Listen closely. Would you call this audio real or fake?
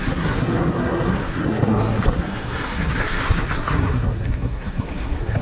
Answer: fake